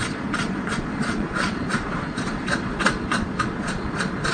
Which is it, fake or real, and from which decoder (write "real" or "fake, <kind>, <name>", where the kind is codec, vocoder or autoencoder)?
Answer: fake, vocoder, Vocos